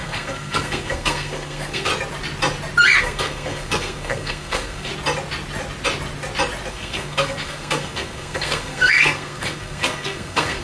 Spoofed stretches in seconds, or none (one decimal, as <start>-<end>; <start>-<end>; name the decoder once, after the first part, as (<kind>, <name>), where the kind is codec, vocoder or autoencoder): 0.0-1.9 (codec, SNAC); 3.0-4.9; 6.7-10.6